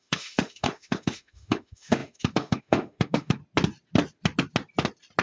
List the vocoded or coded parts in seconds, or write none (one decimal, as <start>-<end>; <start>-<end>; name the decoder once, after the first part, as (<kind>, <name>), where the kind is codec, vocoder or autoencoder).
0.0-3.4 (autoencoder, DAC-VAE)